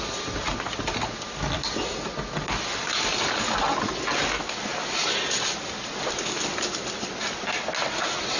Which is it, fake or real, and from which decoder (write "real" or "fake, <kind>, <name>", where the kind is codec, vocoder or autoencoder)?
real